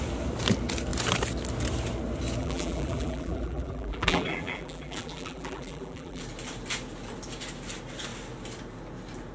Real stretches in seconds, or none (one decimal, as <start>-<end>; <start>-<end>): 0.0-2.4; 6.2-9.3